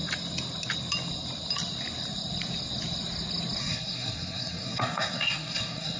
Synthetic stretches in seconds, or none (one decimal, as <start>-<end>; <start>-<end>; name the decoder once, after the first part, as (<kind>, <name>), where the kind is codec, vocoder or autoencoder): 3.6-6.0 (codec, SNAC)